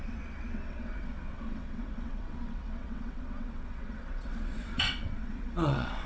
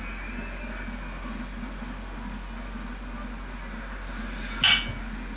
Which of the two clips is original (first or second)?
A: second